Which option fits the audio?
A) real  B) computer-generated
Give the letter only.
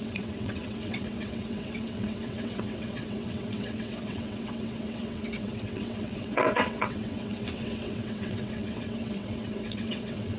B